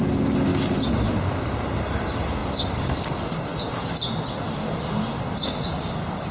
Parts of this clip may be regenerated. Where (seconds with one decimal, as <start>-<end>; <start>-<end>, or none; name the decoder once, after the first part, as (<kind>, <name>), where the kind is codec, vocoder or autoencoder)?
none